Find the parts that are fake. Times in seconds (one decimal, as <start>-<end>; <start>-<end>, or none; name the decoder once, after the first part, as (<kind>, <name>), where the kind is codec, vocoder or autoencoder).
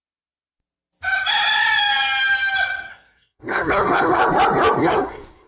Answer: 2.9-4.2 (codec, SNAC); 4.8-5.5